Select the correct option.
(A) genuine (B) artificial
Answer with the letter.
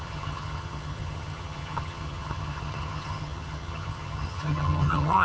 B